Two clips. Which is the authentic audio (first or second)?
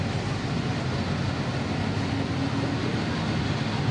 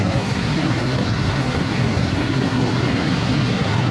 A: first